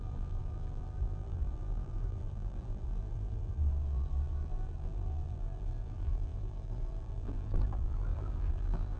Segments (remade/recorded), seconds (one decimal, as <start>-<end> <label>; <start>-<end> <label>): 0.0-9.0 remade